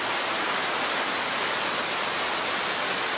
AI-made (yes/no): no